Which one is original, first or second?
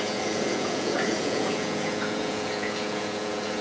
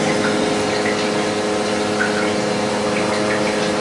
second